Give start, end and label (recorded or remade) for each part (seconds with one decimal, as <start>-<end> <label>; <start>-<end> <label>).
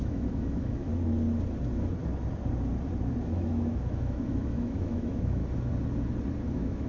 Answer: 0.0-0.9 remade; 0.9-3.2 recorded; 3.2-5.4 remade; 5.4-6.5 recorded; 6.5-6.9 remade